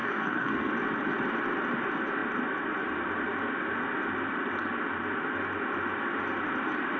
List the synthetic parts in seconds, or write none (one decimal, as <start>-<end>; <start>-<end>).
0.0-0.7